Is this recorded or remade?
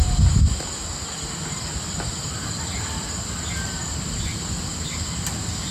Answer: recorded